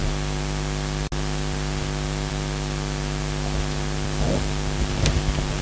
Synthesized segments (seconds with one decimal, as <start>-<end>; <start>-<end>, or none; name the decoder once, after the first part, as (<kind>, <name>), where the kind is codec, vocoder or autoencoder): none